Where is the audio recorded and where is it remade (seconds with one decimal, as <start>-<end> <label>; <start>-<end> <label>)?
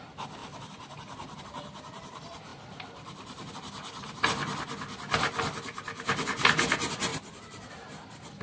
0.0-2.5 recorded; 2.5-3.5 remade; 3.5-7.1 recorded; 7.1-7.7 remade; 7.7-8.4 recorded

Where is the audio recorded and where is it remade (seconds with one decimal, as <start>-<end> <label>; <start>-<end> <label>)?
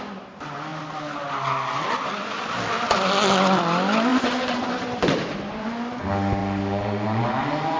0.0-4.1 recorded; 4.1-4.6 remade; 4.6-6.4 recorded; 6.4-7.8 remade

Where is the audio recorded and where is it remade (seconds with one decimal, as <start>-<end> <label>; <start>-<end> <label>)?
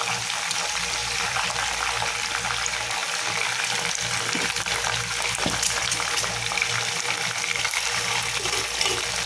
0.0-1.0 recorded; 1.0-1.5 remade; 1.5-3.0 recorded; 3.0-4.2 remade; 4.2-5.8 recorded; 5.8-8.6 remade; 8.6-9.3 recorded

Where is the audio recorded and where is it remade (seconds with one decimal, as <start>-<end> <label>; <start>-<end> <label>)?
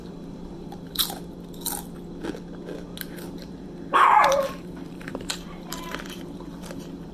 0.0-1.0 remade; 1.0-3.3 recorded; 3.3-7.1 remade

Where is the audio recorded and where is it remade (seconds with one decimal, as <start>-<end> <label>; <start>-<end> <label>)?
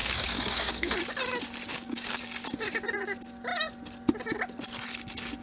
0.0-0.9 remade; 0.9-1.7 recorded; 1.7-2.2 remade; 2.2-5.4 recorded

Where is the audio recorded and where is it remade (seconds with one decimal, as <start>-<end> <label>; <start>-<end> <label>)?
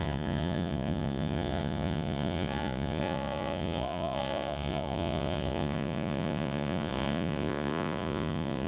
0.0-8.7 remade